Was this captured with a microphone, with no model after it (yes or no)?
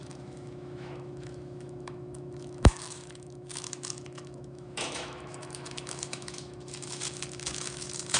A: no